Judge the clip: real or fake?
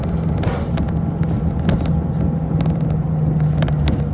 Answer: real